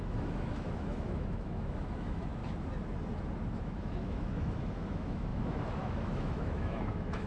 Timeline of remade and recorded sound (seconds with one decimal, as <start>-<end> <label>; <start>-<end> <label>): 0.0-2.4 remade; 2.4-3.6 recorded; 3.6-7.3 remade

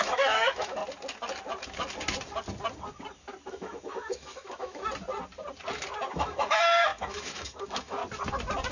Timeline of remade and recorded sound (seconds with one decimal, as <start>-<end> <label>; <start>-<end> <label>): 0.0-0.8 remade; 0.8-3.5 recorded; 3.5-4.8 remade; 4.8-6.1 recorded; 6.1-8.0 remade; 8.0-8.7 recorded

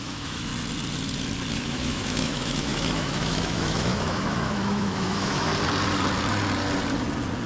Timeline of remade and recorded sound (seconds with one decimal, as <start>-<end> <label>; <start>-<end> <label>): 0.0-0.5 remade; 0.5-1.5 recorded; 1.5-5.5 remade; 5.5-7.5 recorded

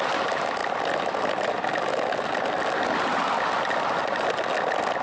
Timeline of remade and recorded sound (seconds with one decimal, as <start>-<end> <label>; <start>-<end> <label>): 0.0-5.0 recorded

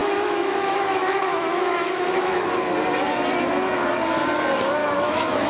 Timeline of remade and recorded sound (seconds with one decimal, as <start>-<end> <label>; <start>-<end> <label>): 0.0-2.5 remade; 2.5-4.8 recorded; 4.8-5.5 remade

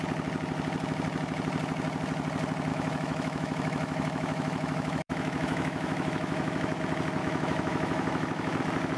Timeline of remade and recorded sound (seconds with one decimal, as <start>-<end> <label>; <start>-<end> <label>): 0.0-2.7 recorded; 2.7-6.8 remade; 6.8-7.2 recorded; 7.2-8.6 remade; 8.6-9.0 recorded

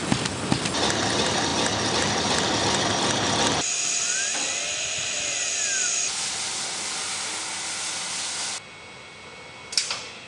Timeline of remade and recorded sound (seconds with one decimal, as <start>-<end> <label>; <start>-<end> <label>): 0.0-10.3 recorded